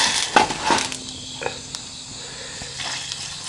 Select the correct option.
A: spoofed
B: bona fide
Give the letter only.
B